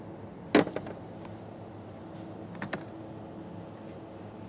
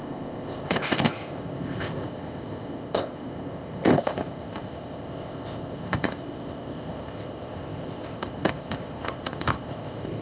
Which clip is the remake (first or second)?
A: second